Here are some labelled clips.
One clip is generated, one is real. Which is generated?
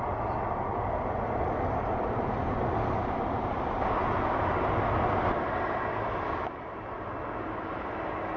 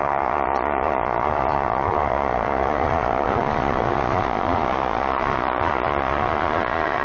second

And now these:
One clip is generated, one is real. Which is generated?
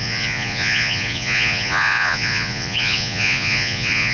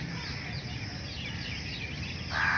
first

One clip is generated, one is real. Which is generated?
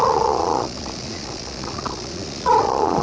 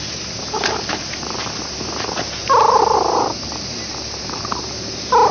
first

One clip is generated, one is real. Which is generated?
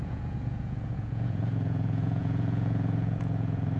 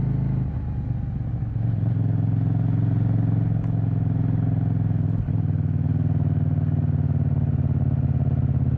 first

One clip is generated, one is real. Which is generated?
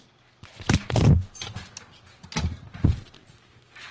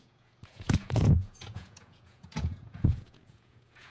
second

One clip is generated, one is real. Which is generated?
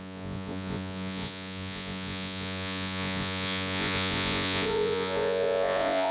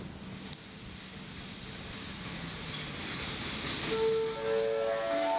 first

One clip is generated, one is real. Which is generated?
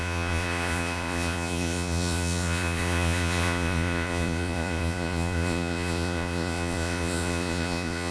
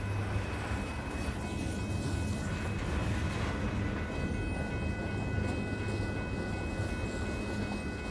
first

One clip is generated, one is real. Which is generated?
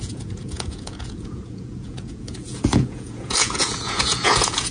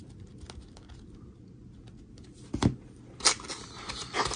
first